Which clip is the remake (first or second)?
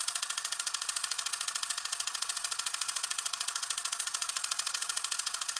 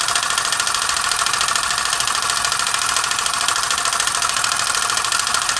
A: first